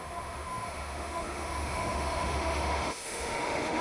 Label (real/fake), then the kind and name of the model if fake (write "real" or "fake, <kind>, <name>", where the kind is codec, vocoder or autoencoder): fake, autoencoder, DAC-VAE